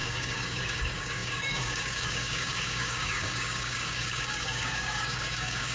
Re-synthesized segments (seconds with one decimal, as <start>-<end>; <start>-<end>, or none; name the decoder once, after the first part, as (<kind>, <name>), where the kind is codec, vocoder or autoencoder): 0.0-5.7 (codec, DAC)